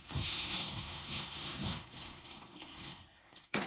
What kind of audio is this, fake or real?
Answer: fake